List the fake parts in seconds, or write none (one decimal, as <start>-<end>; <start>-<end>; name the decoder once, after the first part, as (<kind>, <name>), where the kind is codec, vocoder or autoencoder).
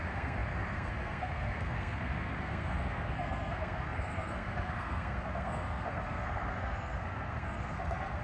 0.0-8.2 (codec, SNAC)